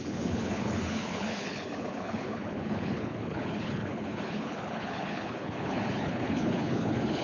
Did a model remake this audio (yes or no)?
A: yes